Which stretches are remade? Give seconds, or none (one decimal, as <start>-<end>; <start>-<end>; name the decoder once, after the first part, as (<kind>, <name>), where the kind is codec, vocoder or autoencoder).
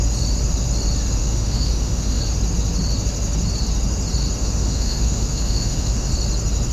1.2-2.2 (autoencoder, DAC-VAE); 4.4-6.1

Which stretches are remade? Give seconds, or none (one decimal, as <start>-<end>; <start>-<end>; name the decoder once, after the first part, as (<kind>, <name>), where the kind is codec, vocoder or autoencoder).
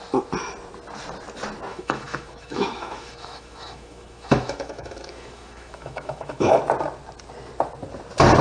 1.7-6.6 (autoencoder, DAC-VAE)